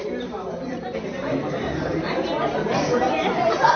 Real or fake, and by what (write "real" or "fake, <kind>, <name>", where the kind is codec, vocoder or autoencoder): fake, vocoder, BigVGAN v2